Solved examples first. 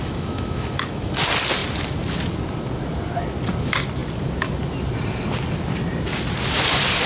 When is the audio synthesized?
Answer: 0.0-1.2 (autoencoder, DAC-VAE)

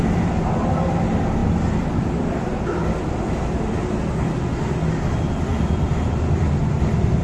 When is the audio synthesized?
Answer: none

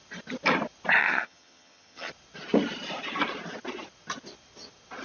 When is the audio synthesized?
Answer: 1.0-2.1 (vocoder, HiFi-GAN)

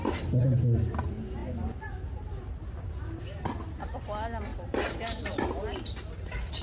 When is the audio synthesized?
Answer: none

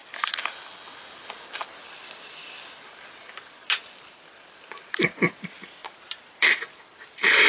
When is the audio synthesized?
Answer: 5.8-6.6 (vocoder, BigVGAN v2)

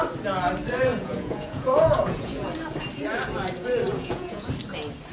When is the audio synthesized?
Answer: 0.9-2.5 (vocoder, Vocos); 3.9-4.5